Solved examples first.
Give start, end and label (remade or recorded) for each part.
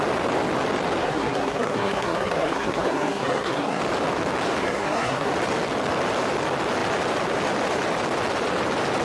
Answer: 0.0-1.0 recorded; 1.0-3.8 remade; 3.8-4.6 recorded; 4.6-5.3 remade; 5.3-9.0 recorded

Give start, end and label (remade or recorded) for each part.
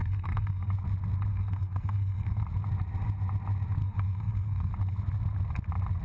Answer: 0.0-0.7 remade; 0.7-1.3 recorded; 1.3-2.4 remade; 2.4-3.8 recorded; 3.8-4.7 remade; 4.7-6.0 recorded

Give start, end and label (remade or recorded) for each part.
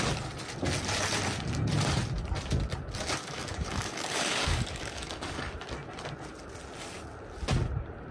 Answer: 0.0-3.2 recorded; 3.2-5.5 remade; 5.5-8.1 recorded